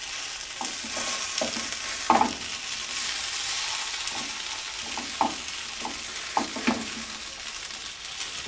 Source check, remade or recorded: recorded